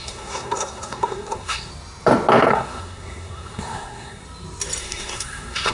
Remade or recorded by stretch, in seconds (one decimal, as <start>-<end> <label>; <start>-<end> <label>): 0.0-1.7 remade; 1.7-2.5 recorded; 2.5-4.2 remade; 4.2-4.8 recorded; 4.8-5.7 remade